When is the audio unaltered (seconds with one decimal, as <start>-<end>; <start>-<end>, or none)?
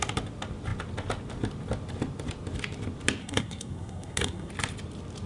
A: 0.0-3.2; 4.5-5.3